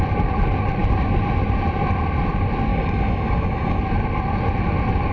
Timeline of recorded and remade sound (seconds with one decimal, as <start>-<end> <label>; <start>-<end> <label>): 0.0-2.7 recorded; 2.7-3.8 remade; 3.8-5.1 recorded